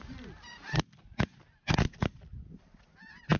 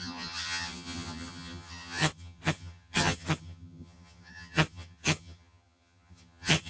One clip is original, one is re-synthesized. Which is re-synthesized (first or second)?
second